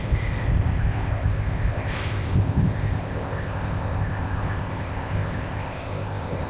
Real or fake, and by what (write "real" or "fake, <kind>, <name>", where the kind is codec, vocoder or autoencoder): fake, codec, ZipCodec